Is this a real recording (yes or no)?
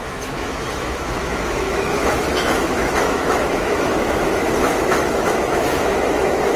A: no